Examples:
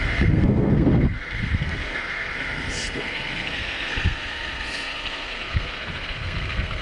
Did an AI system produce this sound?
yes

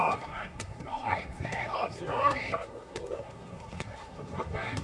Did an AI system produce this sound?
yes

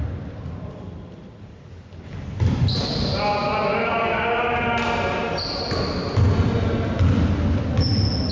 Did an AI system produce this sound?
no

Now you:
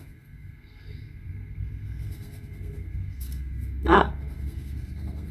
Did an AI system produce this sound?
yes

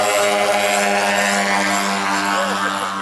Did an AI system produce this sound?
no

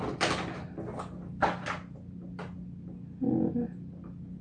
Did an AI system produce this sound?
no